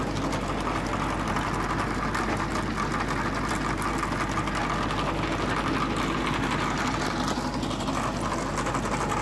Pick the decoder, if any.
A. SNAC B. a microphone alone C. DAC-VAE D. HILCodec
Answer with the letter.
B